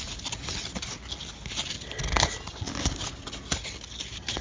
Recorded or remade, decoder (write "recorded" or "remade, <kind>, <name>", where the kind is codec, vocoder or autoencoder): recorded